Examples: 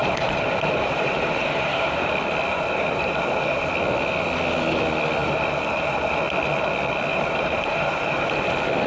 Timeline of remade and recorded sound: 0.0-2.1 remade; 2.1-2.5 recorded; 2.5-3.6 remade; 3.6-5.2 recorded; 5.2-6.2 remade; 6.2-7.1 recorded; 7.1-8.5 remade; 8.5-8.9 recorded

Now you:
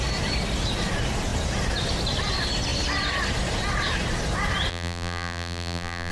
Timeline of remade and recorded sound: 0.0-4.7 recorded; 4.7-6.1 remade